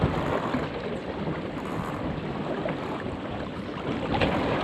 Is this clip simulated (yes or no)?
no